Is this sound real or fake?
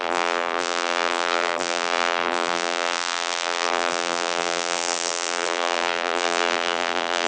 fake